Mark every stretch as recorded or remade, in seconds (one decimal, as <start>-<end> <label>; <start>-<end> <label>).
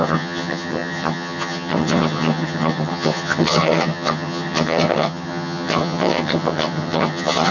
0.0-7.5 remade